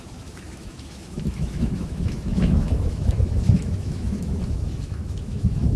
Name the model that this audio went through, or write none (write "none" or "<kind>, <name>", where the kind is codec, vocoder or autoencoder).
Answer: autoencoder, DAC-VAE